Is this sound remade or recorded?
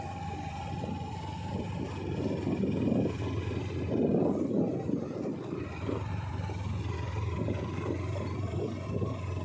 remade